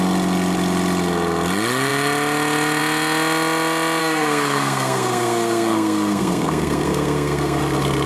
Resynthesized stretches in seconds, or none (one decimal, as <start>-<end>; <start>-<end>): 4.0-7.6